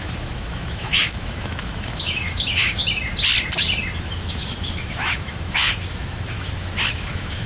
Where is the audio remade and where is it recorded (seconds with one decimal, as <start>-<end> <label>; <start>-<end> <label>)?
0.0-2.8 remade; 2.8-4.0 recorded; 4.0-7.5 remade